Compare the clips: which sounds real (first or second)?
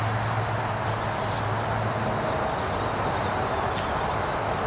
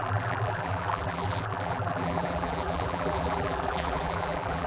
first